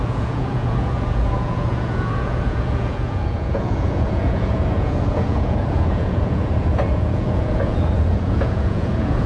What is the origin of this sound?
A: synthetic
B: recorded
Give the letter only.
A